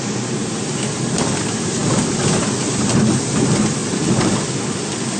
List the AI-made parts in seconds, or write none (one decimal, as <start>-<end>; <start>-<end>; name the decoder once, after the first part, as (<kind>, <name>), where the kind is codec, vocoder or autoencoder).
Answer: none